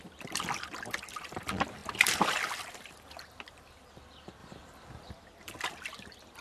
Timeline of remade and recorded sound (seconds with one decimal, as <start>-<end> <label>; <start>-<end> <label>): 0.0-6.4 remade